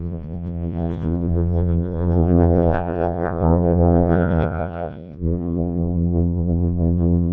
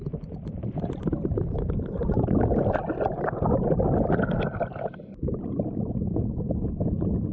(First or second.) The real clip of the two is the second